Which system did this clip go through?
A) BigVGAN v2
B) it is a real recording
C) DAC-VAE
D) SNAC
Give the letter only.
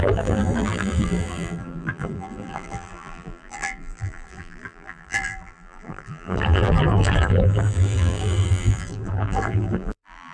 A